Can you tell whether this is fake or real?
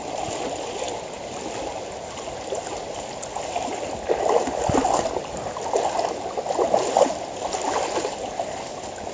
real